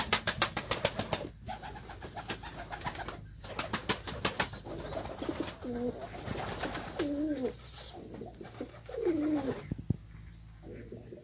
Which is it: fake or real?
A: real